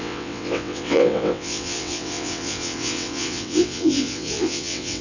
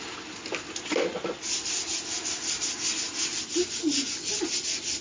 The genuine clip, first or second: second